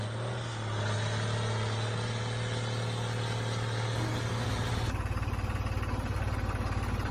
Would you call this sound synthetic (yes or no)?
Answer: no